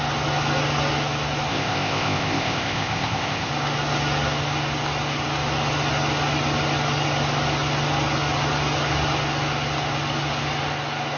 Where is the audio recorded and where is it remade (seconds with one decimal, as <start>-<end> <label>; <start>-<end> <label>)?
0.0-1.5 recorded; 1.5-3.5 remade; 3.5-11.2 recorded